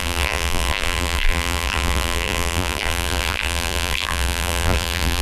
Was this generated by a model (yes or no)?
yes